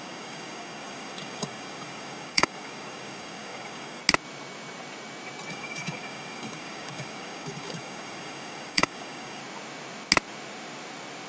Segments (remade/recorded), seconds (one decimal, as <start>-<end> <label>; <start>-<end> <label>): 0.0-4.0 remade; 4.0-5.5 recorded; 5.5-9.4 remade; 9.4-11.3 recorded